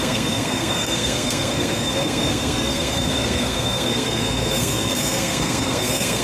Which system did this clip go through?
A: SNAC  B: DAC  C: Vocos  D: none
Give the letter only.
A